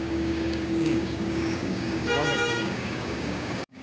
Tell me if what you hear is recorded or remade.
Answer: remade